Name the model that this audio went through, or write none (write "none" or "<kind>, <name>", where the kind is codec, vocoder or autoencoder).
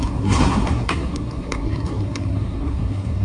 codec, SNAC